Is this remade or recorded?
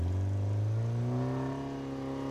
recorded